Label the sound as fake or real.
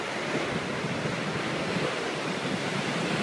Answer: fake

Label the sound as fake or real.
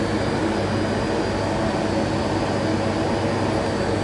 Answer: real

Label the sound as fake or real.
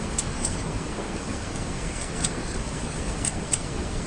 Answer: fake